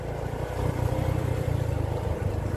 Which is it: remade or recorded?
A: recorded